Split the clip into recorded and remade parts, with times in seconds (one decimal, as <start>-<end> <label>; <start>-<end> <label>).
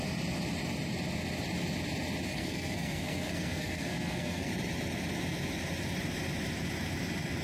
0.0-2.3 recorded; 2.3-4.5 remade; 4.5-7.4 recorded